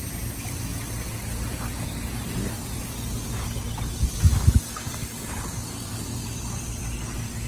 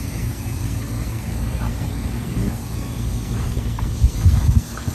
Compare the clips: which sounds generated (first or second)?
second